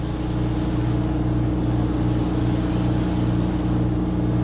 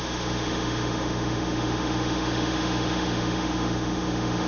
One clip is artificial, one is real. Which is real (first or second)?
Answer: first